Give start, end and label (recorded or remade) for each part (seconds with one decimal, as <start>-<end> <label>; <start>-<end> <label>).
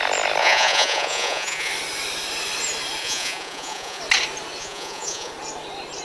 0.0-0.4 recorded; 0.4-1.7 remade; 1.7-3.0 recorded; 3.0-4.0 remade; 4.0-4.6 recorded; 4.6-5.3 remade; 5.3-6.0 recorded